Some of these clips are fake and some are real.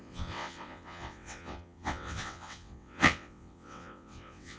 fake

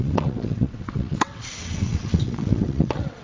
fake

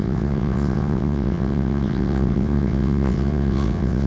fake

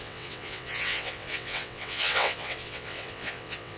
fake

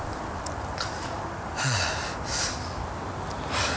real